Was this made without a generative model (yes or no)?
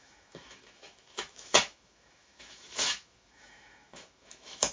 no